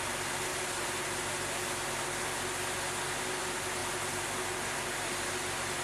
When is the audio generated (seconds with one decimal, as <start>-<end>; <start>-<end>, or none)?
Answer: none